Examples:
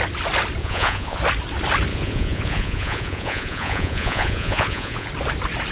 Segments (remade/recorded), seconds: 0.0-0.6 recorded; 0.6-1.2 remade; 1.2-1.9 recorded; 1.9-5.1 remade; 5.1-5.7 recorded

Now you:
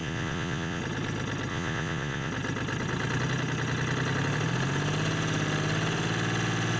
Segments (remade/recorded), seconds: 0.0-0.8 remade; 0.8-1.5 recorded; 1.5-2.3 remade; 2.3-6.8 recorded

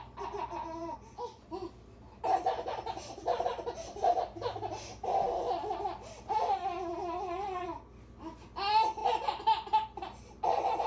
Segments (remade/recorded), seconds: 0.0-10.9 recorded

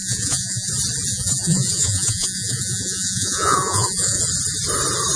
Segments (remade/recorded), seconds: 0.0-0.7 remade; 0.7-1.1 recorded; 1.1-4.2 remade; 4.2-5.2 recorded

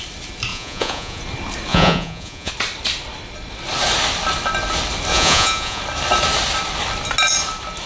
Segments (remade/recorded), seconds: 0.0-0.5 recorded; 0.5-1.2 remade; 1.2-1.7 recorded; 1.7-2.5 remade; 2.5-5.1 recorded; 5.1-5.8 remade; 5.8-7.9 recorded

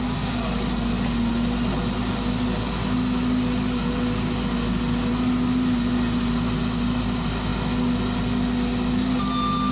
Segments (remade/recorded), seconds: 0.0-9.7 recorded

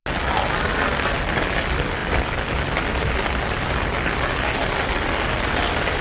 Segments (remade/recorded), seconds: 0.0-6.0 recorded

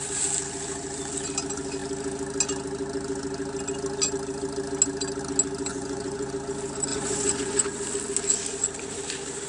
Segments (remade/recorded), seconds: 0.0-5.7 recorded; 5.7-6.3 remade; 6.3-6.9 recorded; 6.9-7.6 remade; 7.6-9.5 recorded